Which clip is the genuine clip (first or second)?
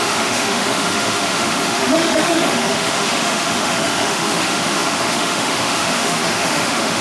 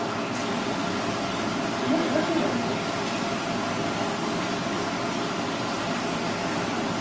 second